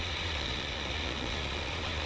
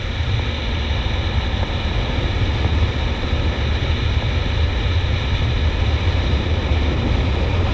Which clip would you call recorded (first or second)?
second